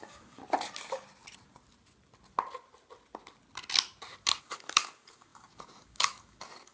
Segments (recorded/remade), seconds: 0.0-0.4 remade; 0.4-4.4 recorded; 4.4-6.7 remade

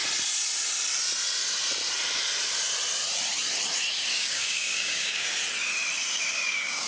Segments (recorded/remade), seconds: 0.0-4.1 recorded; 4.1-5.4 remade; 5.4-6.3 recorded; 6.3-6.9 remade

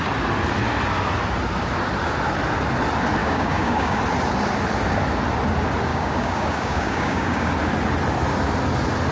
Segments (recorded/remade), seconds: 0.0-3.2 recorded; 3.2-4.0 remade; 4.0-5.9 recorded; 5.9-7.5 remade; 7.5-9.1 recorded